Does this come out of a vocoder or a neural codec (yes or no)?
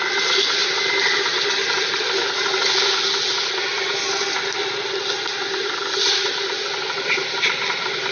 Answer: no